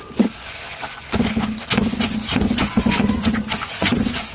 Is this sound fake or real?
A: fake